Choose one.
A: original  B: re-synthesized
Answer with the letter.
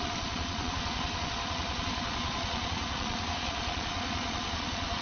B